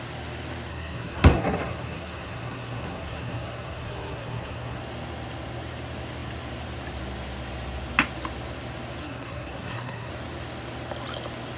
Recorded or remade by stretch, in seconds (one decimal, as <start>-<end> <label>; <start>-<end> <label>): 0.0-0.7 recorded; 0.7-4.8 remade; 4.8-9.0 recorded; 9.0-10.1 remade; 10.1-11.6 recorded